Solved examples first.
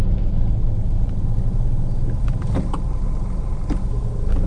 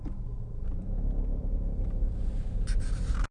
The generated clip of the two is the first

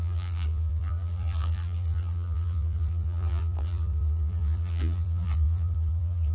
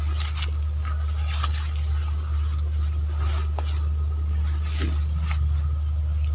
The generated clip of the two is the first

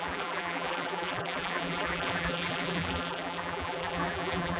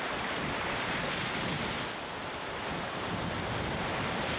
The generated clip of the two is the first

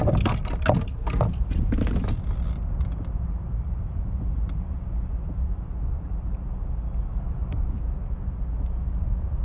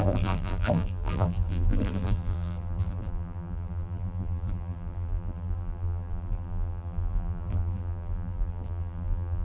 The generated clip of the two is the second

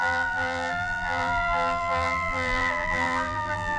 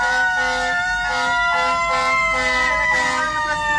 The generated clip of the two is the first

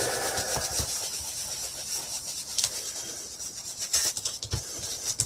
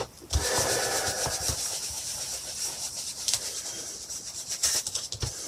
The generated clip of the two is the second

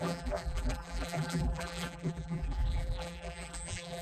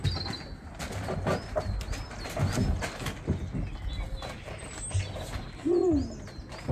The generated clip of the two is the first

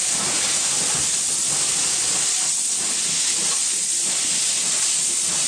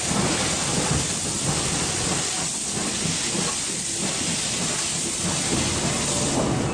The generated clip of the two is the second